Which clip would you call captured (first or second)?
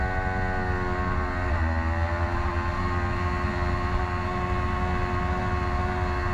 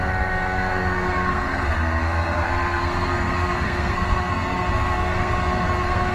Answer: first